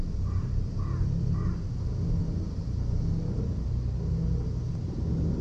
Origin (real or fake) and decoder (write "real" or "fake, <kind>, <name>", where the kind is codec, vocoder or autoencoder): real